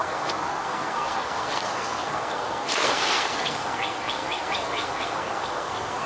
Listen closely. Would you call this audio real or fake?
fake